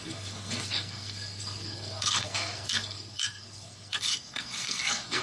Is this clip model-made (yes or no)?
yes